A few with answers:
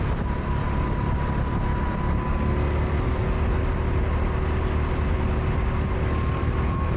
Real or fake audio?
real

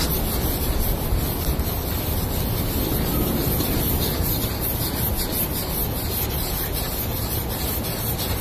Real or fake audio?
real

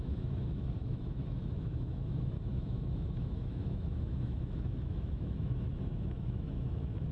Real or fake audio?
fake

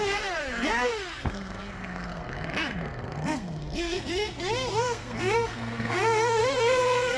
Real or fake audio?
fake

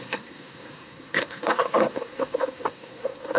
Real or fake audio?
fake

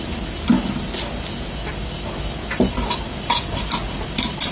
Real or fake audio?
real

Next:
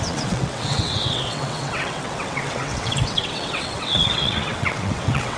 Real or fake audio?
fake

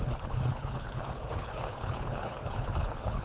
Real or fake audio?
fake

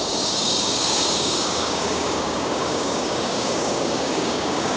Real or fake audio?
fake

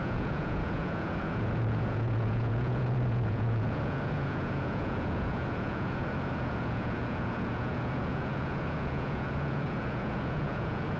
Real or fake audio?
fake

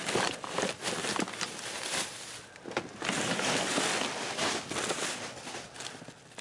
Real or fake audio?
real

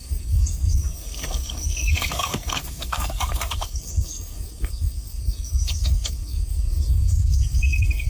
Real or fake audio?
fake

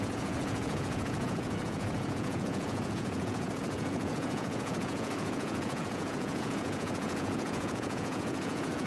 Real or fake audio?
fake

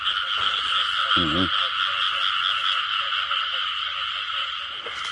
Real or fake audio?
real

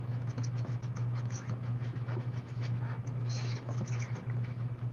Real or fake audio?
fake